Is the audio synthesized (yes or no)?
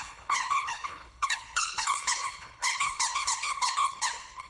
yes